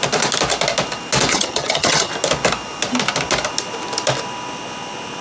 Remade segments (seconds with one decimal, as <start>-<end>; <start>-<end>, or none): 1.3-2.1